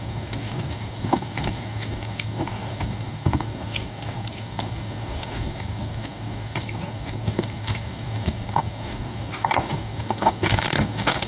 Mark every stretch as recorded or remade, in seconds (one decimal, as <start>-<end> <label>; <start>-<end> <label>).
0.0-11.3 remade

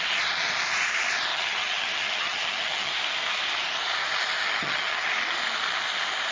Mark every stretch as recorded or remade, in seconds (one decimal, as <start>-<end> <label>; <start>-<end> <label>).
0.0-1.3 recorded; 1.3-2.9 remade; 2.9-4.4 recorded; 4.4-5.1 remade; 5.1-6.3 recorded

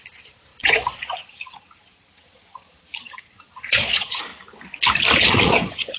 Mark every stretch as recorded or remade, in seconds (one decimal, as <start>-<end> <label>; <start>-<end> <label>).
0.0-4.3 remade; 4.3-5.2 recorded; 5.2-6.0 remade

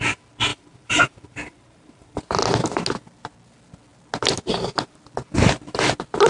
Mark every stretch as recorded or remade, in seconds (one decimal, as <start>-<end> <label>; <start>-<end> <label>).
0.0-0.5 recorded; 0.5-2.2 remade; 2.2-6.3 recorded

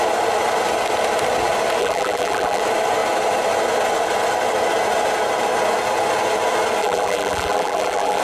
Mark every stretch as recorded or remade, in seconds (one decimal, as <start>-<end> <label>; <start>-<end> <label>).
0.0-1.8 recorded; 1.8-2.6 remade; 2.6-6.8 recorded; 6.8-8.2 remade

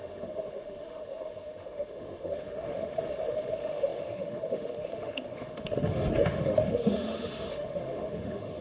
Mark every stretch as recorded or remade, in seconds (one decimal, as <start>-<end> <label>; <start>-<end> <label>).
0.0-8.6 remade

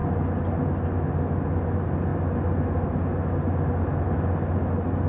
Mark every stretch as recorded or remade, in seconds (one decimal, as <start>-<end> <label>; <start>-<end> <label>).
0.0-5.1 recorded

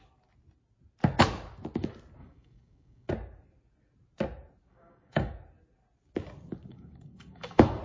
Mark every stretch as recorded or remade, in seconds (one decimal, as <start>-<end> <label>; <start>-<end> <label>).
0.0-2.2 recorded; 2.2-3.1 remade; 3.1-4.7 recorded; 4.7-5.3 remade; 5.3-6.7 recorded; 6.7-7.8 remade